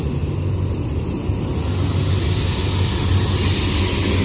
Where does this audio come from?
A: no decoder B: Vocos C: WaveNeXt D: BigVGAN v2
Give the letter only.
A